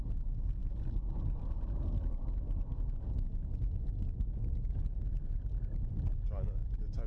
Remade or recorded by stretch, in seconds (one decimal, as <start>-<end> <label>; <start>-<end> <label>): 0.0-7.1 recorded